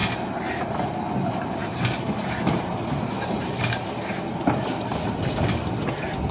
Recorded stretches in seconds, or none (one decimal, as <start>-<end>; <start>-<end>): 1.0-1.6; 3.9-6.3